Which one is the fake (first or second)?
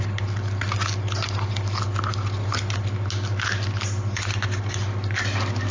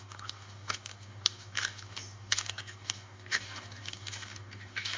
second